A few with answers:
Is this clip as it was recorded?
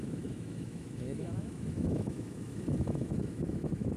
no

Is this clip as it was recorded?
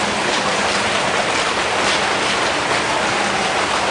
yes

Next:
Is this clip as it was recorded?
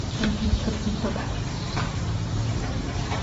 no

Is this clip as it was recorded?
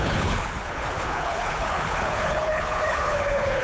no